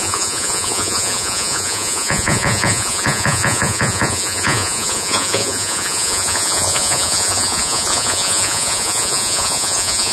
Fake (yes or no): yes